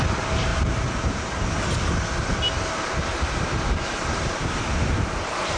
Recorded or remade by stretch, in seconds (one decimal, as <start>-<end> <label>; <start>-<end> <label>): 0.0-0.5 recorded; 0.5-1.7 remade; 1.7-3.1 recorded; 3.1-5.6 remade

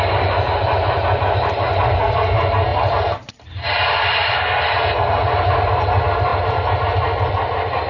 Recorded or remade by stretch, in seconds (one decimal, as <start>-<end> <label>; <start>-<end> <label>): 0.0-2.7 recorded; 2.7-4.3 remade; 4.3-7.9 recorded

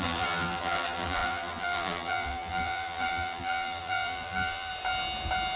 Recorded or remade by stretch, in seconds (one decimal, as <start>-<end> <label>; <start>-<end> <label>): 0.0-4.7 remade; 4.7-5.6 recorded

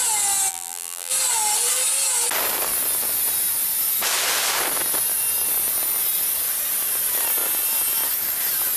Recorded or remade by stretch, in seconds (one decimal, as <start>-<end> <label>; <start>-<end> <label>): 0.0-0.5 recorded; 0.5-1.1 remade; 1.1-8.8 recorded